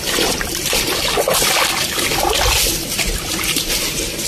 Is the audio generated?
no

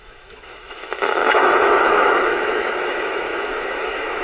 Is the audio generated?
yes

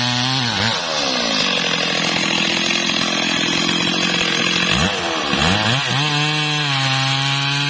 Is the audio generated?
no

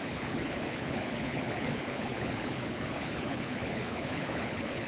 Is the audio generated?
yes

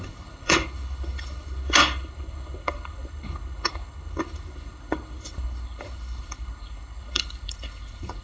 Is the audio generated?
yes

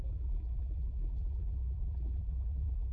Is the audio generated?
yes